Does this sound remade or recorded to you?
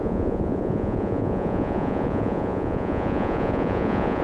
remade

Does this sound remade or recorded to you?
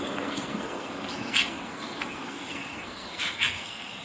remade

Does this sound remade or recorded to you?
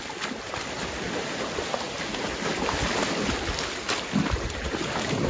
recorded